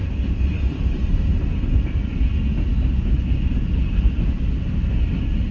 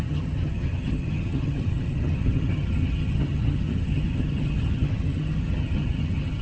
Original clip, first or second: first